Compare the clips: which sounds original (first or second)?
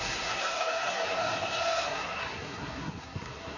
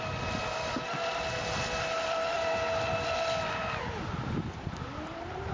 second